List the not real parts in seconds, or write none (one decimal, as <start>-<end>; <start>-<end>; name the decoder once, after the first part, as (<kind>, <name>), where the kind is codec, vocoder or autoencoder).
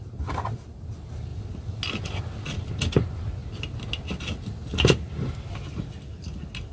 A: none